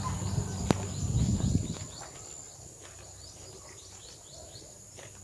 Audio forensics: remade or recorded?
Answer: recorded